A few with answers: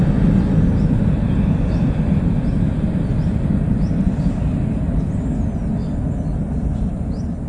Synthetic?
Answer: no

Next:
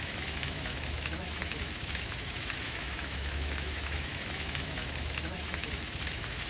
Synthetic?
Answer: yes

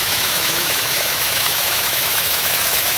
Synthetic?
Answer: yes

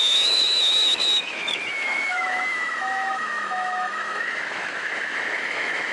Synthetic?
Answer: yes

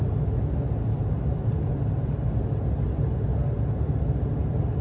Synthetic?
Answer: no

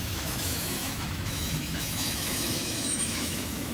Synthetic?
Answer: yes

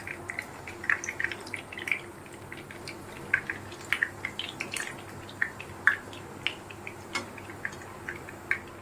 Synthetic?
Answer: no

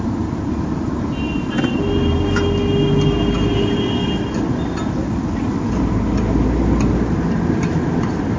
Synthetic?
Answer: no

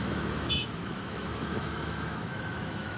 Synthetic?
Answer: yes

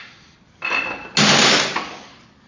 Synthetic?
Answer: no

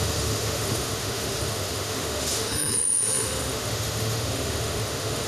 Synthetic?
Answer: yes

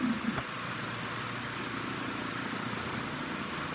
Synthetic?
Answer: no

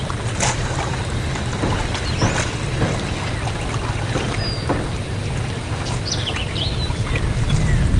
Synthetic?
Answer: no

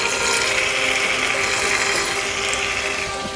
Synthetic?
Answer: no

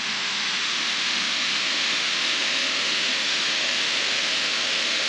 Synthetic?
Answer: yes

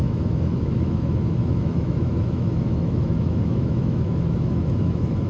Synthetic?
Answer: yes